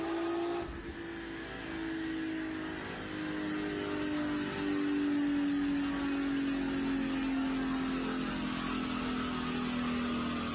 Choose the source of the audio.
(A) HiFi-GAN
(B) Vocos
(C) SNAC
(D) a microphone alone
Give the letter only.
D